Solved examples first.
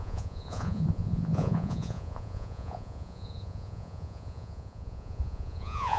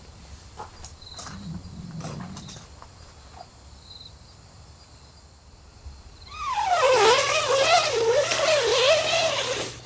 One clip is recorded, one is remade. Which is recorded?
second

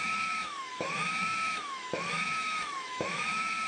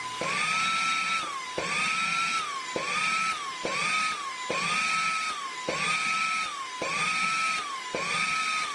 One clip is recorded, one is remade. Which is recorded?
second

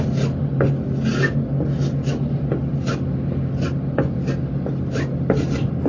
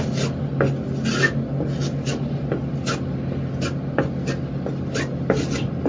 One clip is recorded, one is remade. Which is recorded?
second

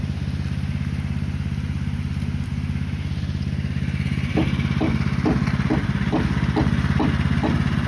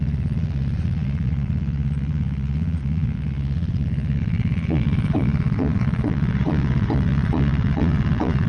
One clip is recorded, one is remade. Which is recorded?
first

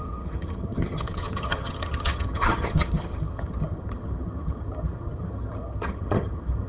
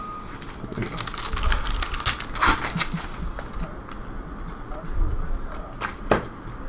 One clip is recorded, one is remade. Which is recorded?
second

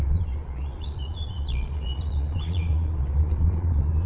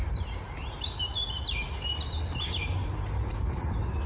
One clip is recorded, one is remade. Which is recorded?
second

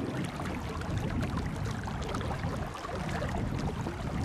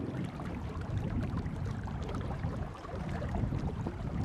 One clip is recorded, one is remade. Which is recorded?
first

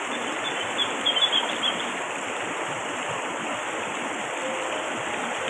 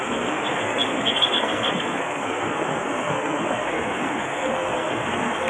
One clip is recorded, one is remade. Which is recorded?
first